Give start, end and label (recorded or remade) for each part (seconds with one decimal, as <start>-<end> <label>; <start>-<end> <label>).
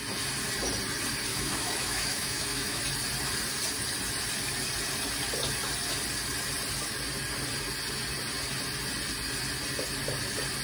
0.0-1.3 recorded; 1.3-2.8 remade; 2.8-10.6 recorded